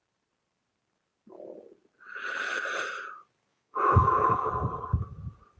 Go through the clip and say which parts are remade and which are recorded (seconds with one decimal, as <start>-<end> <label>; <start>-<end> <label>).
0.0-3.5 recorded; 3.5-4.5 remade; 4.5-5.6 recorded